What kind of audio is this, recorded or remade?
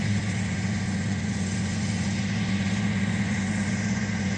remade